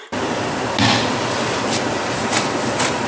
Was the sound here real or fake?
real